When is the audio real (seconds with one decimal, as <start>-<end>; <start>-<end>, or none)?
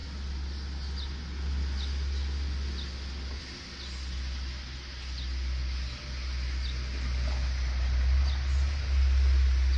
0.0-9.8